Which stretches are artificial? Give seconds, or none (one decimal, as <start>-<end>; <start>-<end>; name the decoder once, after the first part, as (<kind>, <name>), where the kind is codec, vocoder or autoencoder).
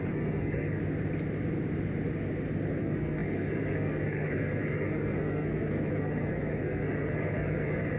0.0-0.8 (codec, SNAC); 2.8-8.0